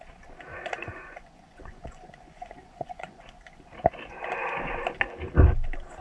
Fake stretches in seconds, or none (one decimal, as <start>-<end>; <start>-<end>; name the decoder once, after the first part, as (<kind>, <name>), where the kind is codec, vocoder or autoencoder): 0.5-3.2 (vocoder, Vocos)